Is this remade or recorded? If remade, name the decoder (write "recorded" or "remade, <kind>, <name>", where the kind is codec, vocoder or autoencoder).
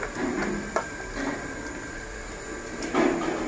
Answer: recorded